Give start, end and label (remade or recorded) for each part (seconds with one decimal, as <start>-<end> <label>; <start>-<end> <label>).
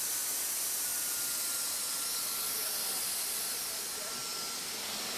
0.0-5.2 recorded